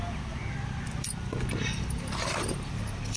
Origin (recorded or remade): recorded